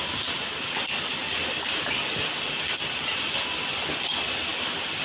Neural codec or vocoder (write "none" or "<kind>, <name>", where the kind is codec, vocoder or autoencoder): none